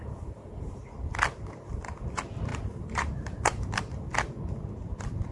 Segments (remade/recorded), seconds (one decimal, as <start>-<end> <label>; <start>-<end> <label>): 0.0-0.8 remade; 0.8-2.5 recorded; 2.5-4.0 remade; 4.0-5.3 recorded